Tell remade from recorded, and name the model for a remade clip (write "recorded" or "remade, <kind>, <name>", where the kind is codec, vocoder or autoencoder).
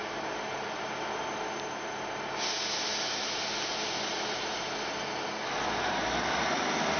recorded